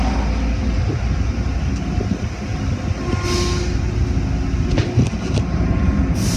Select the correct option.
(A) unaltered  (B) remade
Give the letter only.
A